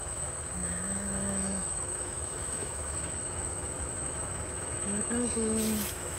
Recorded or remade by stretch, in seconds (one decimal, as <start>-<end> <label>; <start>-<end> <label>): 0.0-6.2 remade